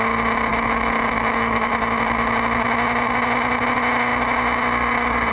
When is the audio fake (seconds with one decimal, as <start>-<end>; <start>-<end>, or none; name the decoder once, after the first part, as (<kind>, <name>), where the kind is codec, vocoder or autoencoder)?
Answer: 0.5-1.7 (autoencoder, DAC-VAE)